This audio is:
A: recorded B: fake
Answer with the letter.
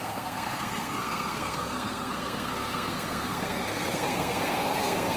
B